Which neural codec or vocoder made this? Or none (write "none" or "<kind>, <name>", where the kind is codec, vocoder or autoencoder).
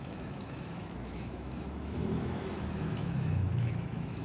autoencoder, DAC-VAE